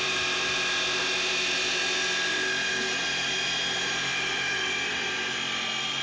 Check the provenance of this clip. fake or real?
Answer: real